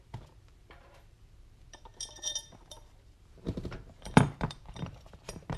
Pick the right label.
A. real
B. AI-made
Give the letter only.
B